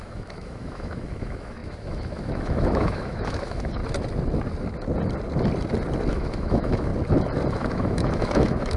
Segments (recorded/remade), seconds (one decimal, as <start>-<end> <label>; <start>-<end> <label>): 0.0-3.8 remade; 3.8-6.1 recorded; 6.1-6.9 remade; 6.9-7.5 recorded; 7.5-8.8 remade